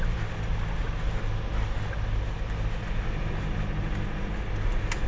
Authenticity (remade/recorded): recorded